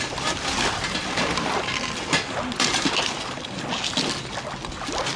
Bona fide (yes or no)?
yes